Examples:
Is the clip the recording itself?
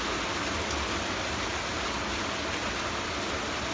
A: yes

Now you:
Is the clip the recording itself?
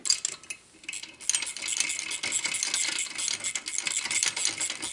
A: yes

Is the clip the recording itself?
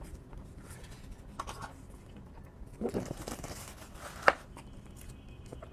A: yes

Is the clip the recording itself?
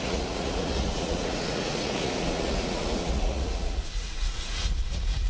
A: no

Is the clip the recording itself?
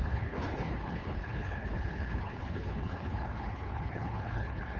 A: no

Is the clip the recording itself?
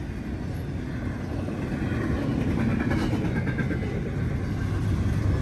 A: yes